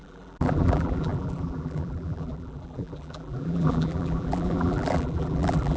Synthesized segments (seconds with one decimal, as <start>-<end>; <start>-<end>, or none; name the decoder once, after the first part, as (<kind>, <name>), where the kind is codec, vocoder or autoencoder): 0.0-5.8 (vocoder, BigVGAN v2)